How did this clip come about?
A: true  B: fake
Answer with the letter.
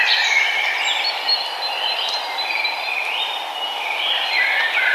A